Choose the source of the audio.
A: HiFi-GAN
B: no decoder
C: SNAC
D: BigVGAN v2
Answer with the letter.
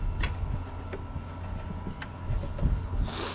B